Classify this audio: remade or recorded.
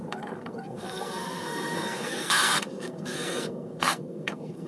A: remade